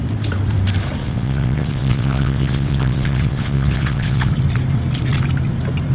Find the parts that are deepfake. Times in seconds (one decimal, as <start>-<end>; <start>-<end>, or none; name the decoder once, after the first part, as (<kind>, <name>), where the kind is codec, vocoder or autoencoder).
1.0-4.3 (vocoder, WaveNeXt)